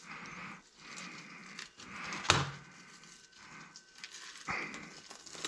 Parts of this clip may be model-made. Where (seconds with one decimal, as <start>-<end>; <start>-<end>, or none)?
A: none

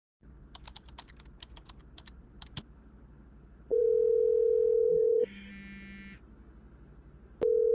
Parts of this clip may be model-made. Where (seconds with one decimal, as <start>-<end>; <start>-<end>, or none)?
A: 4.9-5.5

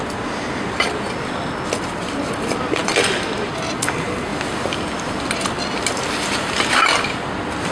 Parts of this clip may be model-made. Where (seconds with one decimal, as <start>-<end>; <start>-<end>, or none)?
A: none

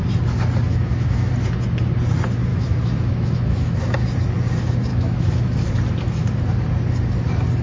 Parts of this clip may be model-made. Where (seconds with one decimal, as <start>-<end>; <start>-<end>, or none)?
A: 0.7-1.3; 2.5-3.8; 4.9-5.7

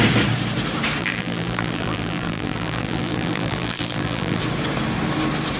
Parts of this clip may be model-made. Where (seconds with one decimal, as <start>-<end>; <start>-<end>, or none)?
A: 1.0-4.4